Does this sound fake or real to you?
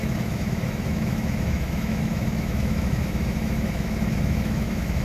fake